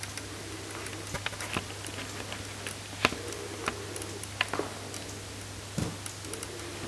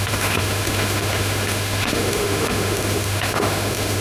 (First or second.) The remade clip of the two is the second